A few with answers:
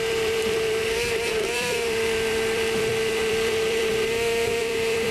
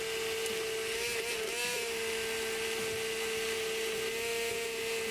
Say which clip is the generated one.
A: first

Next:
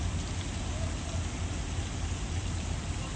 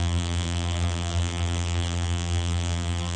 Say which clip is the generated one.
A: second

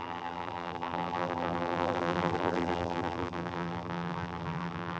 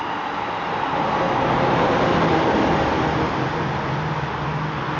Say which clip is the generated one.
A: first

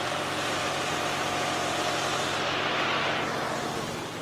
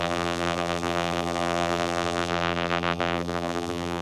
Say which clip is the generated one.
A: second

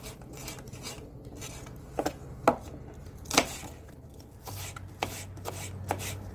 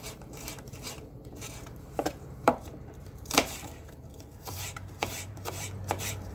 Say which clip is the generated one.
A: second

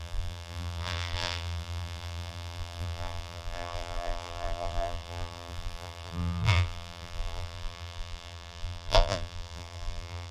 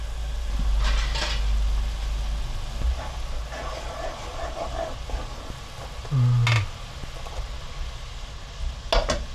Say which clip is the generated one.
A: first